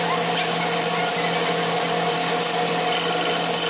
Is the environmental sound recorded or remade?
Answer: recorded